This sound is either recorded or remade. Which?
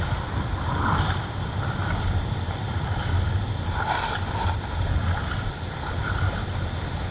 recorded